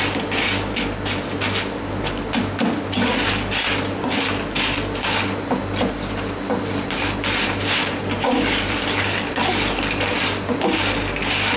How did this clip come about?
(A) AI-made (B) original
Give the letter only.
B